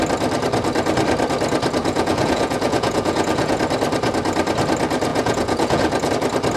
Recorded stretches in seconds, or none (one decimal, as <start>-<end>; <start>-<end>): 0.0-1.8; 3.6-5.1; 6.1-6.6